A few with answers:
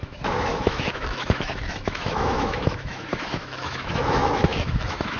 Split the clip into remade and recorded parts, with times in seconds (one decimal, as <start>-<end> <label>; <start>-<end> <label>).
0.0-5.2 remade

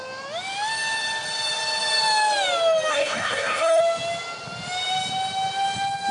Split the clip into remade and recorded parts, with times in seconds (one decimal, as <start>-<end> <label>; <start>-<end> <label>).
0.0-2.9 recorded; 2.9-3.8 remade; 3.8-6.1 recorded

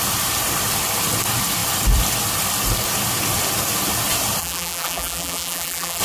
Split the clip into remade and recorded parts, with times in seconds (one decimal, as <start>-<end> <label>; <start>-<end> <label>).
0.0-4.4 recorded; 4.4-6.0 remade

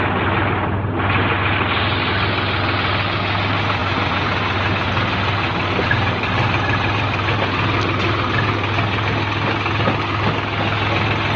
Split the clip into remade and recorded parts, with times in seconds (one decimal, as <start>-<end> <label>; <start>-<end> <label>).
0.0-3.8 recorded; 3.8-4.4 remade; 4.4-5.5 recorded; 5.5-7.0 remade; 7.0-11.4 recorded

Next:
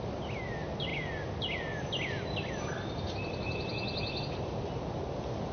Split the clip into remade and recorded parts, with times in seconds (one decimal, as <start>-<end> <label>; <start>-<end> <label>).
0.0-5.5 recorded

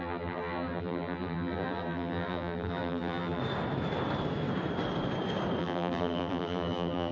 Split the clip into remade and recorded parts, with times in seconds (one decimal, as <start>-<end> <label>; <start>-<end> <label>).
0.0-3.4 remade; 3.4-5.6 recorded; 5.6-7.1 remade

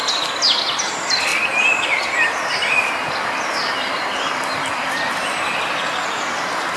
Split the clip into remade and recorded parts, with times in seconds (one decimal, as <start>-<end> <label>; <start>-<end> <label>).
0.0-1.3 recorded; 1.3-5.1 remade; 5.1-6.8 recorded